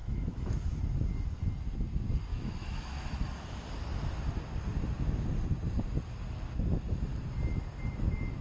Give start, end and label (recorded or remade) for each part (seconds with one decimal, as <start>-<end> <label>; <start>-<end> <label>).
0.0-0.8 remade; 0.8-2.3 recorded; 2.3-3.1 remade; 3.1-8.4 recorded